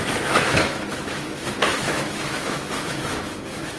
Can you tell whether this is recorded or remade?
remade